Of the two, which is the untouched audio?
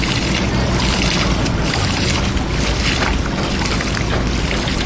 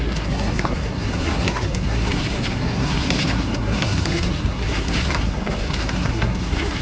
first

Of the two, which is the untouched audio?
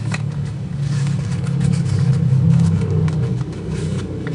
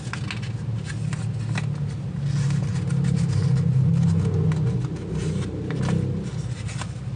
second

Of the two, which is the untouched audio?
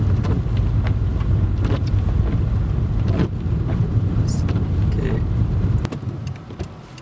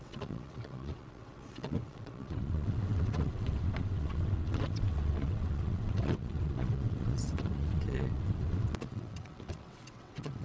first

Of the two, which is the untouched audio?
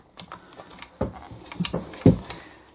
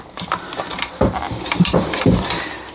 first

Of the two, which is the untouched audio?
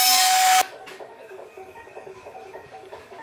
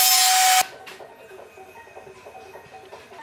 second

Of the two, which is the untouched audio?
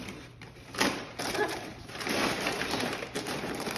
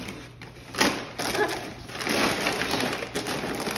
second